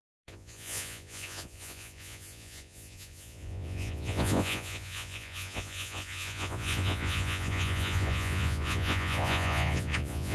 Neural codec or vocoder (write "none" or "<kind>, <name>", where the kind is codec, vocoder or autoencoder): vocoder, Vocos